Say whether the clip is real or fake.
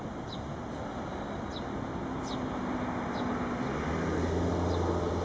real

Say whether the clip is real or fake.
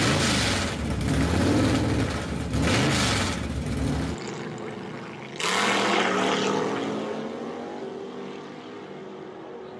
real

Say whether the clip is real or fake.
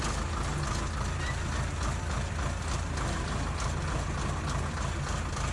real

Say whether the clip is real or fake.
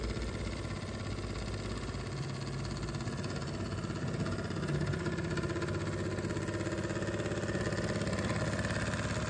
real